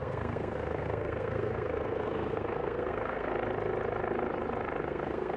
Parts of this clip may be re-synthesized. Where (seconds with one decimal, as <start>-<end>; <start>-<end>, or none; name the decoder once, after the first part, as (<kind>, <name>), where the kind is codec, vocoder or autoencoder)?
0.0-3.3 (codec, SNAC); 4.8-5.4